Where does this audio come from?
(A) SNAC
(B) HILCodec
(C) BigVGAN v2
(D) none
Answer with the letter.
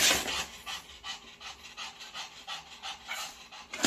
D